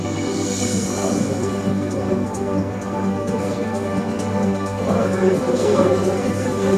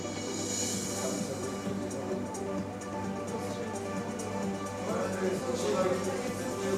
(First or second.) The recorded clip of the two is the second